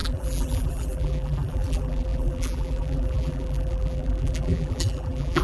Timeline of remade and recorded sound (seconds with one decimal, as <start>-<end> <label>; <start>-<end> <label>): 0.0-5.4 remade